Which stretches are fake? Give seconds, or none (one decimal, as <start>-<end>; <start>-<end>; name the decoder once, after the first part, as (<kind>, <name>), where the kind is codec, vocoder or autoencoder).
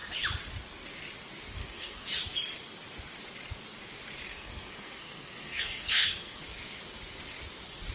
1.6-2.1 (codec, SNAC); 4.3-6.4